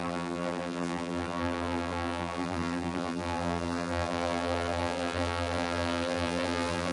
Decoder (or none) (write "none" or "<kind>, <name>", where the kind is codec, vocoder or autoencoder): vocoder, BigVGAN v2